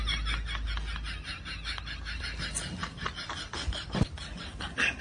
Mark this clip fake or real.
real